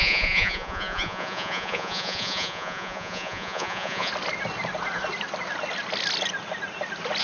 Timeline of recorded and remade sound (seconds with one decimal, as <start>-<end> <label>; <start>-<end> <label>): 0.0-4.1 remade; 4.1-7.2 recorded